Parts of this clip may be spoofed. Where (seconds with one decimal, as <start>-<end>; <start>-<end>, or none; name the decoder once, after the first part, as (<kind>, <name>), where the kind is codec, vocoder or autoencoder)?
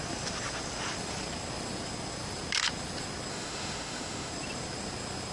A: 3.3-4.3 (autoencoder, DAC-VAE)